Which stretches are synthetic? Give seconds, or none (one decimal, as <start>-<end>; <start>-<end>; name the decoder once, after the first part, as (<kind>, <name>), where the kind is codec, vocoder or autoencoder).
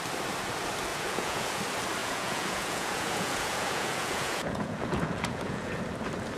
0.9-1.6 (vocoder, Vocos); 2.0-5.8